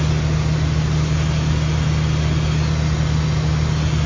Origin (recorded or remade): recorded